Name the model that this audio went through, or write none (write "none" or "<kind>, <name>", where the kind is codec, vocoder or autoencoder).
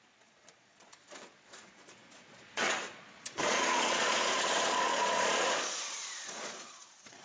vocoder, Vocos